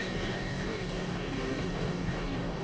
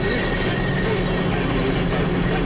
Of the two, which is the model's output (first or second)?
first